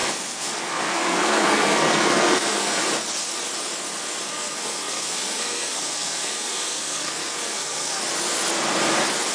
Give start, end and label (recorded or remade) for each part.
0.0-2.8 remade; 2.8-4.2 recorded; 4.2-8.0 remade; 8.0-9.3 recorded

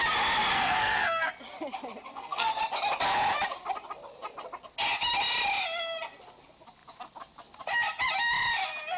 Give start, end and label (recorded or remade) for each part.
0.0-0.5 recorded; 0.5-1.3 remade; 1.3-2.1 recorded; 2.1-2.6 remade; 2.6-9.0 recorded

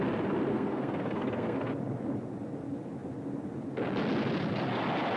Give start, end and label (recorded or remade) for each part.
0.0-0.5 recorded; 0.5-1.7 remade; 1.7-5.2 recorded

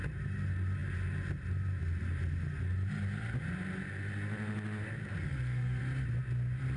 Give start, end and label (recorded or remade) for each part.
0.0-5.0 recorded; 5.0-5.8 remade; 5.8-6.8 recorded

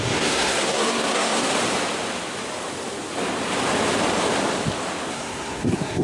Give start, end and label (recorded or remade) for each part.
0.0-1.5 remade; 1.5-5.1 recorded; 5.1-6.0 remade

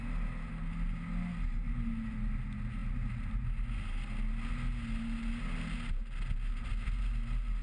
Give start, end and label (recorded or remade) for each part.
0.0-7.6 recorded

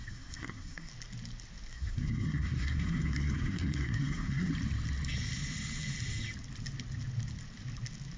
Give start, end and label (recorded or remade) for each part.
0.0-0.9 remade; 0.9-1.7 recorded; 1.7-4.5 remade; 4.5-8.2 recorded